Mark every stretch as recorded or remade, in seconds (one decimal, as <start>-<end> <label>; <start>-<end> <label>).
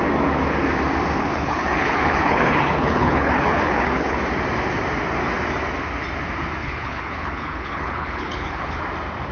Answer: 0.0-1.2 recorded; 1.2-4.2 remade; 4.2-6.6 recorded; 6.6-8.8 remade; 8.8-9.3 recorded